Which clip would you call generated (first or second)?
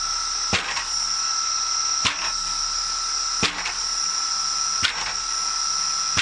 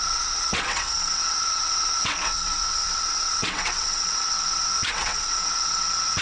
second